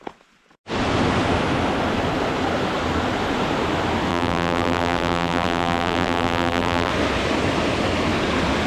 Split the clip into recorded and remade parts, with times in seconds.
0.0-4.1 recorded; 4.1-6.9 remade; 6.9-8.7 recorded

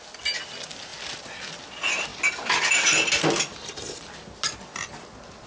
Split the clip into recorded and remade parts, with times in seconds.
0.0-5.5 recorded

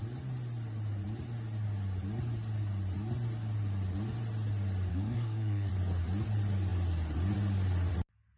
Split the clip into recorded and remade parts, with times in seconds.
0.0-4.9 recorded; 4.9-5.7 remade; 5.7-8.4 recorded

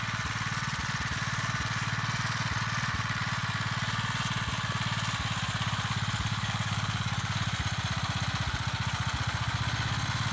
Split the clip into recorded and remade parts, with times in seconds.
0.0-6.3 recorded; 6.3-7.4 remade; 7.4-10.3 recorded

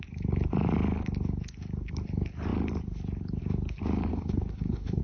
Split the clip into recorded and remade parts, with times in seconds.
0.0-4.1 recorded; 4.1-5.0 remade

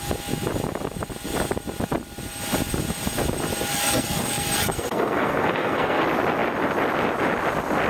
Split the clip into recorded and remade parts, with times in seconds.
0.0-3.7 recorded; 3.7-6.0 remade; 6.0-7.9 recorded

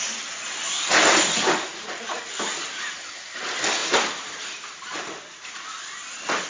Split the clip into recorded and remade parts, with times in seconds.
0.0-3.8 recorded; 3.8-5.5 remade; 5.5-6.5 recorded

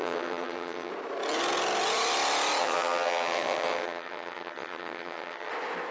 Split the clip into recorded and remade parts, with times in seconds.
0.0-0.9 remade; 0.9-2.6 recorded; 2.6-5.5 remade; 5.5-5.9 recorded